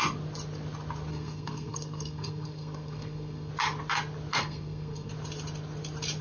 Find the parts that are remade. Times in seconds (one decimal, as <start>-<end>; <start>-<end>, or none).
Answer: 1.1-3.5; 4.4-5.1